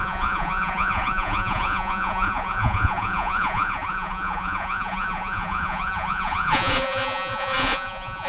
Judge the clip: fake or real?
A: fake